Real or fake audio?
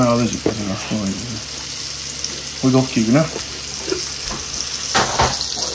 real